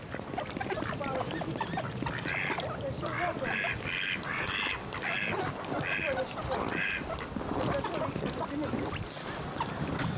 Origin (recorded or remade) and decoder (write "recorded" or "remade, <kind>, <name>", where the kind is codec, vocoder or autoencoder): remade, vocoder, BigVGAN v2